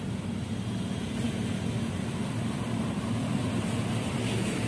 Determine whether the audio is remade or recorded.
recorded